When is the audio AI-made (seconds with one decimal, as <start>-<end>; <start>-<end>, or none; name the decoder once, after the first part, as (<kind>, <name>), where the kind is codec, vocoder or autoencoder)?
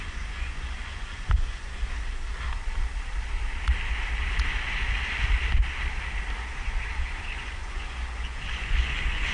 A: 0.0-1.8 (vocoder, Vocos); 6.4-9.3